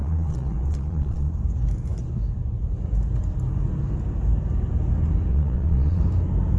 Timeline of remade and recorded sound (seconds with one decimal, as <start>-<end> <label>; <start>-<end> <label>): 0.0-1.3 remade; 1.3-5.3 recorded; 5.3-6.0 remade; 6.0-6.6 recorded